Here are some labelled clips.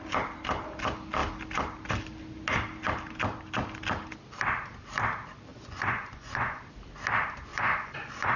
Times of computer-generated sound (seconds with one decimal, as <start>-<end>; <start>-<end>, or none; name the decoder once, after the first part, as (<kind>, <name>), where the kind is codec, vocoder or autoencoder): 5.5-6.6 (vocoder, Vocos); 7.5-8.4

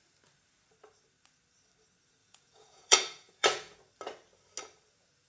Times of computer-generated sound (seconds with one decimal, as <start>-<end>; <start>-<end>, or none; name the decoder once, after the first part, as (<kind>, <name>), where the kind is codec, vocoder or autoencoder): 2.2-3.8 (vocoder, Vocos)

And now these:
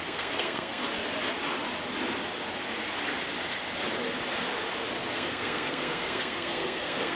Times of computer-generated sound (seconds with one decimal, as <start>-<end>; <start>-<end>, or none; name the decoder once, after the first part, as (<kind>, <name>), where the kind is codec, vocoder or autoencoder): 0.0-0.8 (codec, SNAC); 5.1-7.2